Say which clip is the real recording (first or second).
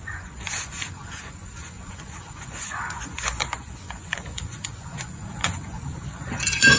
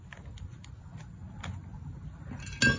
second